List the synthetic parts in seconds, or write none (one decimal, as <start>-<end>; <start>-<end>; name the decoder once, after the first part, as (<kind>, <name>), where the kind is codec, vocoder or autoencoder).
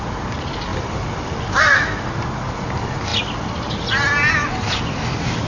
0.7-1.6 (vocoder, BigVGAN v2)